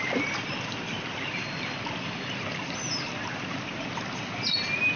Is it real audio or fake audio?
real